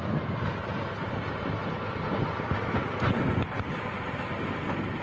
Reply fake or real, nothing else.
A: real